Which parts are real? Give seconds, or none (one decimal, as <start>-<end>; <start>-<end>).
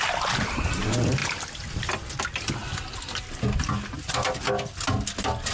0.0-1.2; 1.9-5.5